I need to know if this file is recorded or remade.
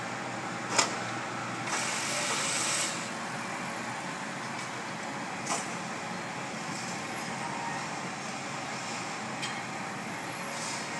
recorded